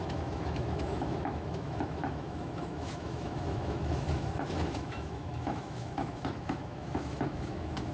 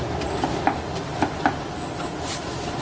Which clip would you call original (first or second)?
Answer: second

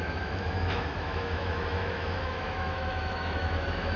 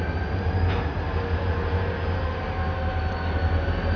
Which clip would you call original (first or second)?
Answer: second